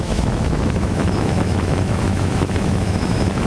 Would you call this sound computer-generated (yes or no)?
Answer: yes